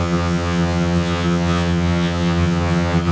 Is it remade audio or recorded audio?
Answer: remade